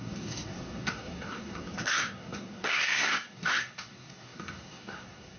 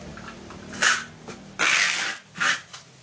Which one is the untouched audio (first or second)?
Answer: second